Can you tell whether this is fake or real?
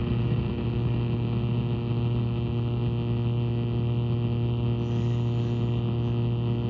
real